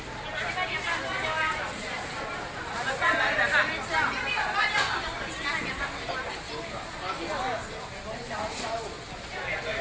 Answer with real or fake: real